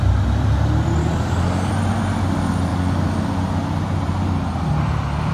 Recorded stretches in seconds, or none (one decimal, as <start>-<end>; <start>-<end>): 0.0-1.0; 1.7-5.3